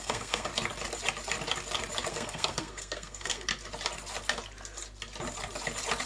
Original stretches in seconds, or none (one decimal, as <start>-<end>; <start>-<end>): 0.5-2.1; 3.5-6.1